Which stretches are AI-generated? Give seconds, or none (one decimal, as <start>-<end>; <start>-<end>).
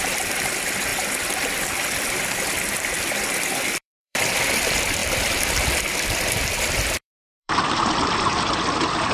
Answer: 0.0-0.9; 2.1-9.1